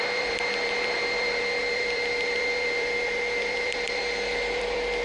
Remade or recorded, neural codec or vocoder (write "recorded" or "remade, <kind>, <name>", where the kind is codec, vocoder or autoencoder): remade, vocoder, BigVGAN v2